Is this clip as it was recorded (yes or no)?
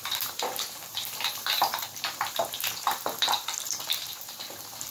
no